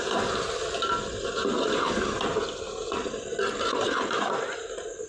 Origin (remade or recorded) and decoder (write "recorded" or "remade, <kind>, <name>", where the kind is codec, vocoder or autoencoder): recorded